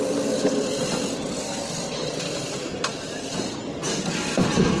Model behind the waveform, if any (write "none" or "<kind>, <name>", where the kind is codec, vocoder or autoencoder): none